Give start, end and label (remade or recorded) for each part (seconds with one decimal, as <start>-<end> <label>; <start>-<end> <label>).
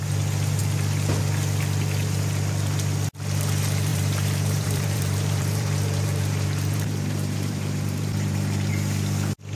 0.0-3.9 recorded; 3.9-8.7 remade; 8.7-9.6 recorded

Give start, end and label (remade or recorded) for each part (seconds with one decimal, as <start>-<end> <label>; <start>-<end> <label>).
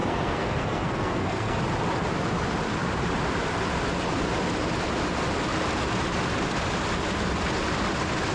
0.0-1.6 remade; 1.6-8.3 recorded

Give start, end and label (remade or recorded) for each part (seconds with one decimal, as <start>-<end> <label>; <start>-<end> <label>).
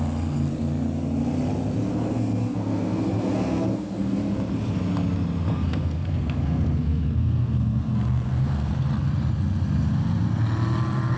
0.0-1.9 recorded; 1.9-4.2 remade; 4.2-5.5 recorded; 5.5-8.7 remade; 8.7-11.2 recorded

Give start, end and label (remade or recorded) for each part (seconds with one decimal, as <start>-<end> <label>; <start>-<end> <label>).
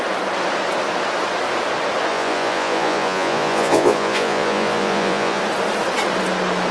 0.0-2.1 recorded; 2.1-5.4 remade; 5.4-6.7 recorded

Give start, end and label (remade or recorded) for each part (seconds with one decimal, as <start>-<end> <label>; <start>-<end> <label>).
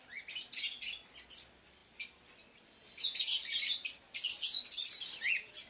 0.0-5.7 recorded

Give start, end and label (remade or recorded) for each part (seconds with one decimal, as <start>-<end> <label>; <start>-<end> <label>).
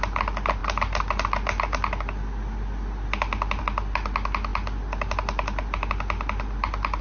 0.0-7.0 recorded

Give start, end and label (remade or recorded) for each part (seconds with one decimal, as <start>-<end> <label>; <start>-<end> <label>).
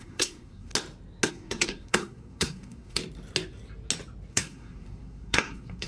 0.0-0.7 remade; 0.7-1.3 recorded; 1.3-3.0 remade; 3.0-4.3 recorded; 4.3-5.9 remade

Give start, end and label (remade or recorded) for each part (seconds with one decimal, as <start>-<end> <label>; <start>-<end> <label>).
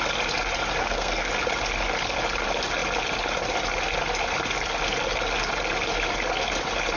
0.0-0.8 recorded; 0.8-1.3 remade; 1.3-7.0 recorded